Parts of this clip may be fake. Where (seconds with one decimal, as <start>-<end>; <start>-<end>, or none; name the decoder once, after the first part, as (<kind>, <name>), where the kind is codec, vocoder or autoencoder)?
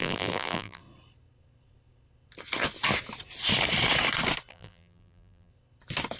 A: 0.0-0.8 (vocoder, BigVGAN v2); 4.5-5.5